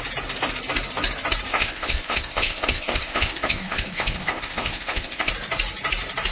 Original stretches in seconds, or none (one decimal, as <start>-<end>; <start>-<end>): 0.0-1.5; 5.3-6.3